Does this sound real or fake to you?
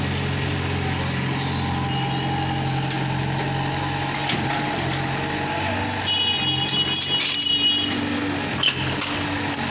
real